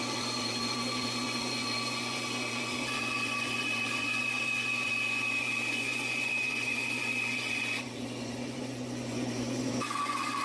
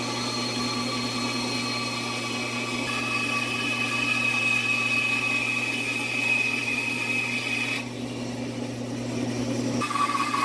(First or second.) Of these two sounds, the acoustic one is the second